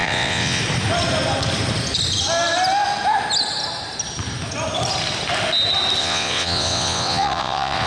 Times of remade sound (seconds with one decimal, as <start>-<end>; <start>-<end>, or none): 0.0-0.6; 6.0-7.9